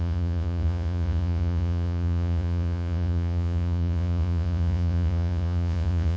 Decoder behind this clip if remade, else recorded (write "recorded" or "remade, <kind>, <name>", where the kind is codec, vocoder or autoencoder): remade, vocoder, Vocos